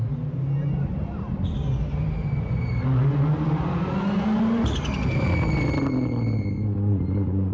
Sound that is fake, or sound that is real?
real